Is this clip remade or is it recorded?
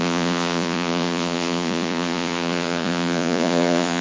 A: remade